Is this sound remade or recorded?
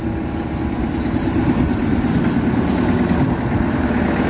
recorded